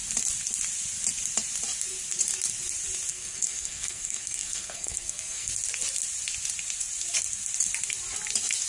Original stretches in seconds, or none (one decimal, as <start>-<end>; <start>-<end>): 0.0-3.1; 5.5-8.7